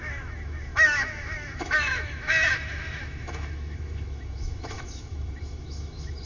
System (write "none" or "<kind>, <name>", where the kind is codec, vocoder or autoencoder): autoencoder, DAC-VAE